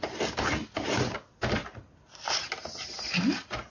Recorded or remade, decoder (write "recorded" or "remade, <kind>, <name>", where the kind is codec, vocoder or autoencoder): recorded